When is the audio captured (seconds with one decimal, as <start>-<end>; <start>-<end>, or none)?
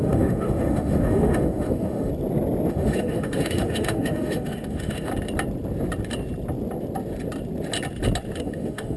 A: 2.1-2.7; 5.1-8.4